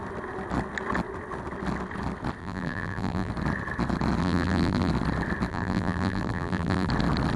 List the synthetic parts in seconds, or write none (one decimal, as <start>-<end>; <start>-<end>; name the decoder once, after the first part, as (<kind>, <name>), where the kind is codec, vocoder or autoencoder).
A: 2.4-3.3 (vocoder, BigVGAN v2); 4.2-4.9; 5.5-6.9